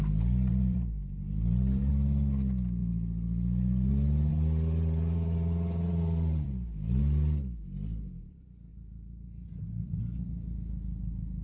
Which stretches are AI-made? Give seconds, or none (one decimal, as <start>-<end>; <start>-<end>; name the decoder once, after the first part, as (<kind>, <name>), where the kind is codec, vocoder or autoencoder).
0.5-1.9 (vocoder, BigVGAN v2); 4.3-7.0; 8.7-10.0